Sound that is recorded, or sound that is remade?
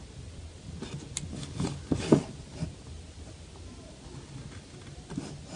recorded